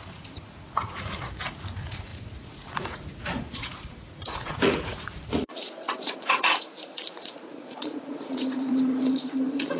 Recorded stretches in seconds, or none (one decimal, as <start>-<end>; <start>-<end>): none

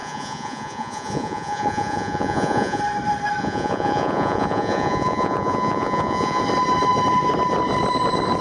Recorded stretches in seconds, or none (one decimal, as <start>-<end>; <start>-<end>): 2.8-3.4; 6.4-8.4

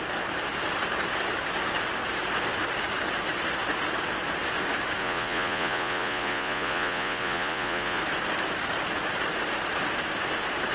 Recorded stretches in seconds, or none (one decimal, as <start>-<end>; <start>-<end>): 0.0-5.0; 8.0-10.7

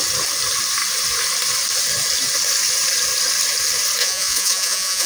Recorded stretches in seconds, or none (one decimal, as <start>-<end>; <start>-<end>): 0.0-4.0

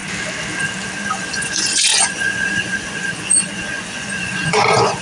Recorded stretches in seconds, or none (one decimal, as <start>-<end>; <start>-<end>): 0.0-1.0

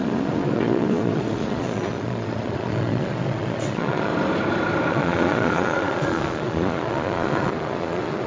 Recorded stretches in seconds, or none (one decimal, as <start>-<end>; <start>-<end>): 4.1-4.9

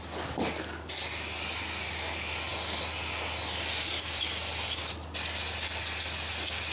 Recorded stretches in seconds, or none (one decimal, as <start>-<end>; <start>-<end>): 0.0-6.7